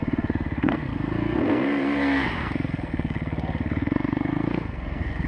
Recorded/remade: remade